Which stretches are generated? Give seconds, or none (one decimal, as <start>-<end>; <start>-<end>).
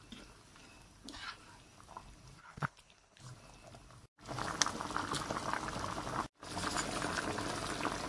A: 2.4-3.2